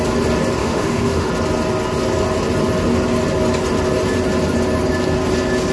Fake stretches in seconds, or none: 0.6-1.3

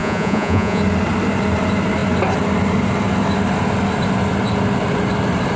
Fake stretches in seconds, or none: 0.0-0.8

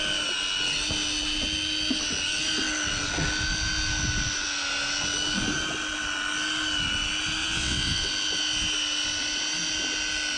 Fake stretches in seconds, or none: 7.4-8.1

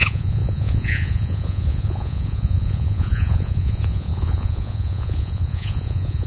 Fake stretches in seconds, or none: 0.0-6.3